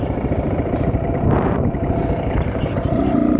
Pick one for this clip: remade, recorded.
remade